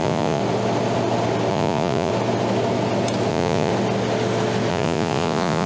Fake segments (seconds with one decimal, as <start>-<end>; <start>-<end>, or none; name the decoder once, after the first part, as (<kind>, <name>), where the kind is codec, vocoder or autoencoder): 0.0-0.4 (vocoder, Vocos); 1.5-2.1; 3.3-3.7; 4.7-5.7